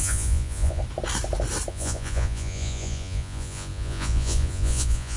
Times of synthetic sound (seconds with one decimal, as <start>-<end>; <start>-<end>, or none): 0.0-0.8; 1.7-5.2